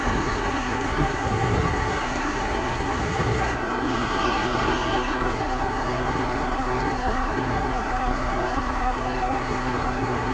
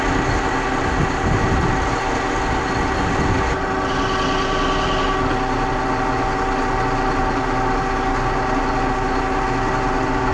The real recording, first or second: second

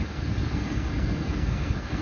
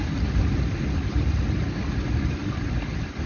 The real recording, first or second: second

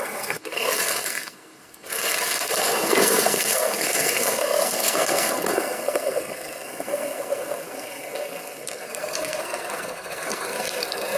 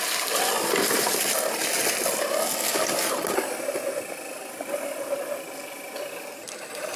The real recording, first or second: second